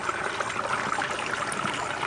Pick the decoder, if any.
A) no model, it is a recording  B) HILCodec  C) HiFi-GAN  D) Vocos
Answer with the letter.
A